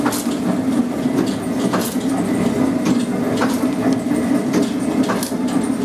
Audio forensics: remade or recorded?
recorded